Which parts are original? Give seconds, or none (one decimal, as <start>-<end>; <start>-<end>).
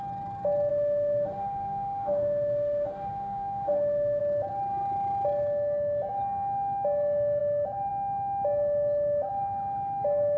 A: 0.0-0.7; 4.2-10.4